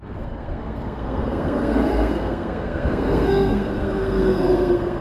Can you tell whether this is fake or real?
fake